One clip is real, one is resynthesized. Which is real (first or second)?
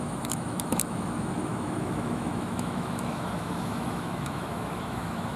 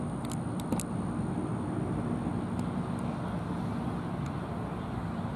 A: second